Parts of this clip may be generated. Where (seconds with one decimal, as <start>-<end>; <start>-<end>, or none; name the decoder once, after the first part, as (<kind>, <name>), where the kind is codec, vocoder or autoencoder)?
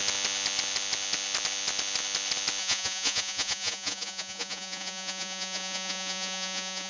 2.6-6.9 (vocoder, Vocos)